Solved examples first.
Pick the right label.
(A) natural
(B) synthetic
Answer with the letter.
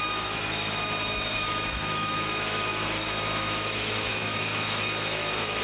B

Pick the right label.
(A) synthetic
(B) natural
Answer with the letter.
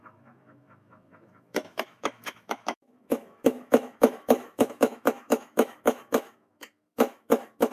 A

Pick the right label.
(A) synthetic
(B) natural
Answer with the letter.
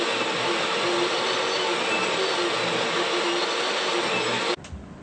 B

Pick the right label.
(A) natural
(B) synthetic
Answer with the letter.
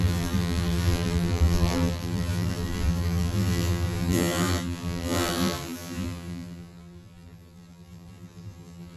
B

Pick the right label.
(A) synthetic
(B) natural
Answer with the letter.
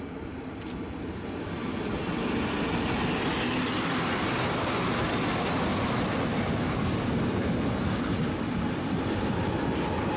B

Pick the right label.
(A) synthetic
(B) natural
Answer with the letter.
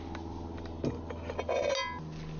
B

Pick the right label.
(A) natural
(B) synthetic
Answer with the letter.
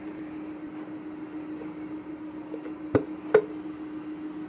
A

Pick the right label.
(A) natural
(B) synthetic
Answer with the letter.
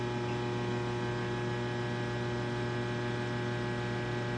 A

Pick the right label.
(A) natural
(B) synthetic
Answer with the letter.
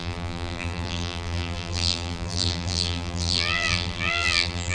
B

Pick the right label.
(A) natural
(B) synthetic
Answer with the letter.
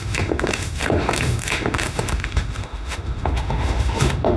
B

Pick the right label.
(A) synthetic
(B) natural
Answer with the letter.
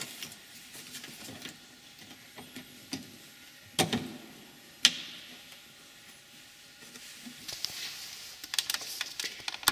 B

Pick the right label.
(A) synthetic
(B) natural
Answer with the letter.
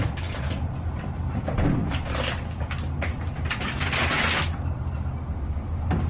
B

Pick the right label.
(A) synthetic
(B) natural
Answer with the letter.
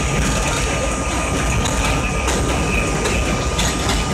B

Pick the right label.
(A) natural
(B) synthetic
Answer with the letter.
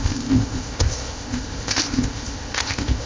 B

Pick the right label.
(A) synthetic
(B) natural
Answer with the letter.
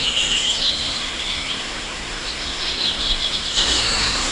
A